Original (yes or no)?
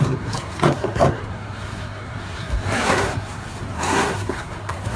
no